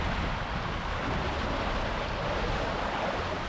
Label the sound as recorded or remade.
recorded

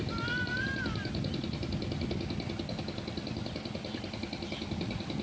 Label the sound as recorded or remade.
recorded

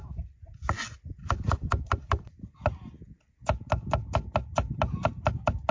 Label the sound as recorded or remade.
recorded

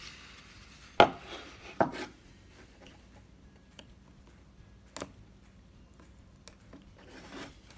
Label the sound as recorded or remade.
recorded